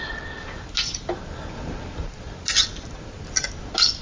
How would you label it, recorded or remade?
recorded